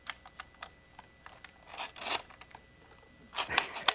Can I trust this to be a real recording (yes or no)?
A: yes